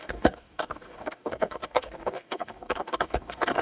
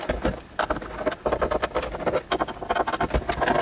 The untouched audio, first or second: second